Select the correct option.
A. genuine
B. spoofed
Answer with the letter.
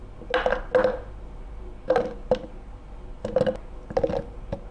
A